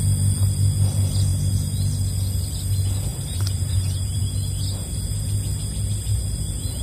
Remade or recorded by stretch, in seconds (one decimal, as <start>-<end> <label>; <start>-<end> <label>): 0.0-3.1 recorded; 3.1-4.2 remade; 4.2-6.8 recorded